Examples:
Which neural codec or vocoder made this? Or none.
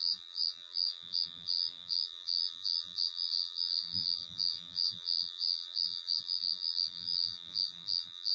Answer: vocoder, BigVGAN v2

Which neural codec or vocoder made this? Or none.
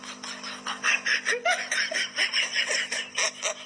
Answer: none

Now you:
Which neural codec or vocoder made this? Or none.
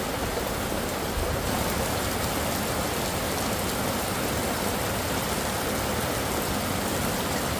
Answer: none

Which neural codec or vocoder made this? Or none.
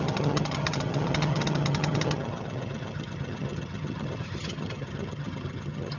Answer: vocoder, HiFi-GAN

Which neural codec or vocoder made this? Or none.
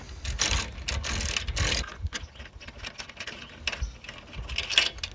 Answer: none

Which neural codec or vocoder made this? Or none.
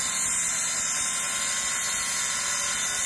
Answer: none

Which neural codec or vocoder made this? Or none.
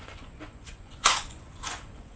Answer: vocoder, Vocos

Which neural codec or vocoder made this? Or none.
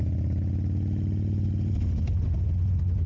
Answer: none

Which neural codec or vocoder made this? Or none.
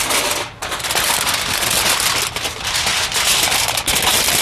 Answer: none